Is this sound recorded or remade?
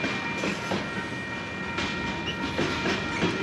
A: recorded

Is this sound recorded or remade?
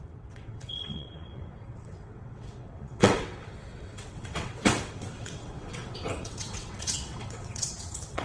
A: remade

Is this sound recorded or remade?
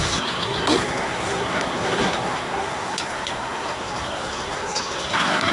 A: remade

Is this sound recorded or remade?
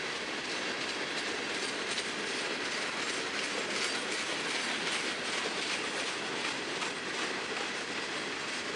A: recorded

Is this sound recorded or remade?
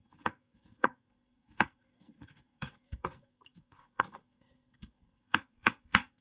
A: remade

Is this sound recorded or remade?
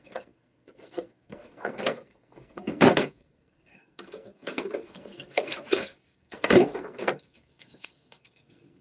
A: remade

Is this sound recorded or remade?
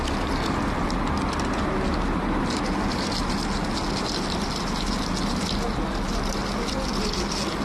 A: recorded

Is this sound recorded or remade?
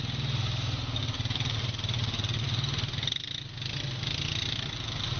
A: recorded